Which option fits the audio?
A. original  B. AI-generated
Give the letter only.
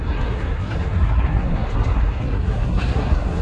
B